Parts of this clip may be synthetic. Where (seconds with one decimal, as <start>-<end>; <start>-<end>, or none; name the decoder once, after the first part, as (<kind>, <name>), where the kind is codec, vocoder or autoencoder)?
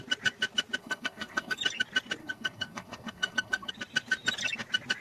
0.8-1.6 (codec, SNAC); 2.2-3.7